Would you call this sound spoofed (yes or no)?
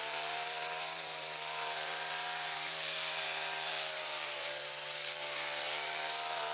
yes